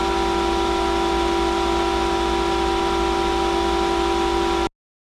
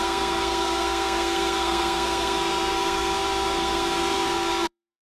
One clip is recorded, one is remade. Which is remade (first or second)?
second